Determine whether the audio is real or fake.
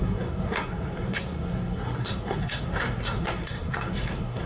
fake